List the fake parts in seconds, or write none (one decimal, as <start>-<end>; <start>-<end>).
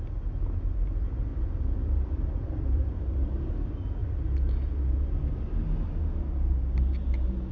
1.3-3.5